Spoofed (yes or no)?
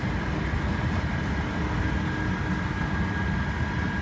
no